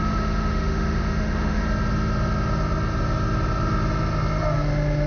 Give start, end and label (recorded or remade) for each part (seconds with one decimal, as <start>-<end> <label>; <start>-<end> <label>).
0.0-1.6 remade; 1.6-5.1 recorded